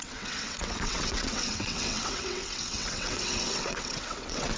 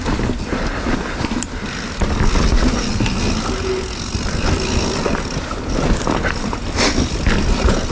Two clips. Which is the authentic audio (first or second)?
second